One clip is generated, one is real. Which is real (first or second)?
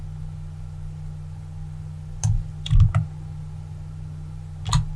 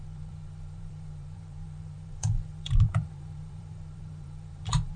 first